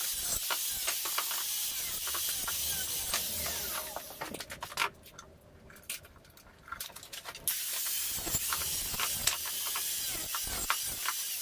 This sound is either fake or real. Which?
real